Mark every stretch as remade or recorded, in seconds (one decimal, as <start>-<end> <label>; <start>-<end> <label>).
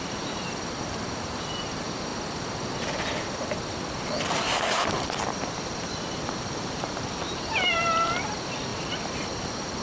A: 0.0-2.1 remade; 2.1-4.0 recorded; 4.0-9.8 remade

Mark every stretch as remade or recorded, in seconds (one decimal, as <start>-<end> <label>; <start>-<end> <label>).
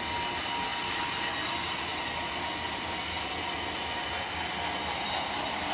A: 0.0-5.7 recorded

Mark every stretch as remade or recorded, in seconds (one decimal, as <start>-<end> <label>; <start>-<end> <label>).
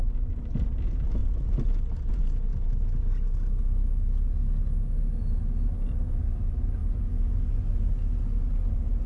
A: 0.0-1.2 recorded; 1.2-2.1 remade; 2.1-9.1 recorded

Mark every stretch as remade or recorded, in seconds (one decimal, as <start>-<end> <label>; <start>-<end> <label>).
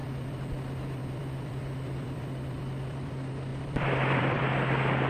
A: 0.0-3.1 remade; 3.1-3.5 recorded; 3.5-4.4 remade; 4.4-5.1 recorded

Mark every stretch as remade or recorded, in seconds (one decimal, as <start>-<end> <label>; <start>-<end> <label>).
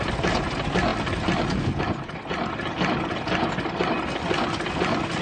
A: 0.0-5.2 recorded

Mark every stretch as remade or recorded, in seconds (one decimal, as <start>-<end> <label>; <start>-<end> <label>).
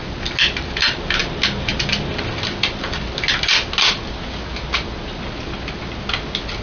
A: 0.0-6.6 recorded